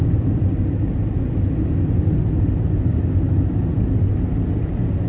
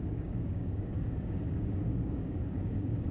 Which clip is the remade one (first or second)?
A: second